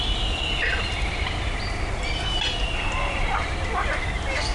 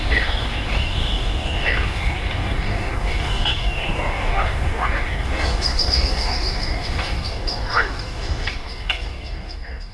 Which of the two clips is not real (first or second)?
second